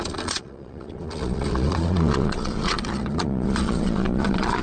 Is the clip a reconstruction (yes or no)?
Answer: yes